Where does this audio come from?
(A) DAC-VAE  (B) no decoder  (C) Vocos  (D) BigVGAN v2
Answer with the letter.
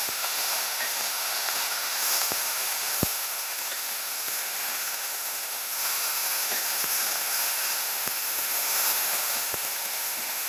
A